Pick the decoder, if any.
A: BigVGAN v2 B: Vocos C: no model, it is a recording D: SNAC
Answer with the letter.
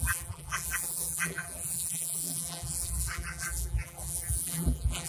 A